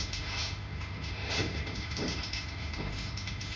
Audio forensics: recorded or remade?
remade